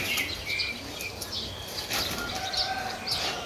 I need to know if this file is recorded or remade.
recorded